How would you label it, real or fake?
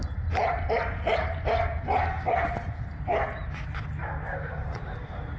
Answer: real